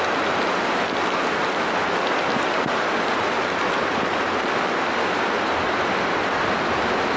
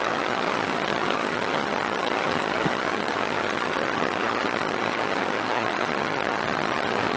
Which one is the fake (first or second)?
second